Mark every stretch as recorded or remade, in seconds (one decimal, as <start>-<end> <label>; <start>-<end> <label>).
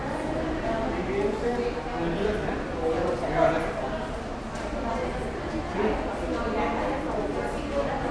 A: 0.0-8.1 recorded